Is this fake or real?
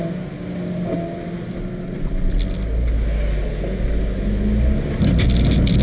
real